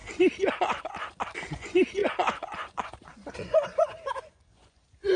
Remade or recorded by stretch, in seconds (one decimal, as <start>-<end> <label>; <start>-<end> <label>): 0.0-1.5 recorded; 1.5-5.2 remade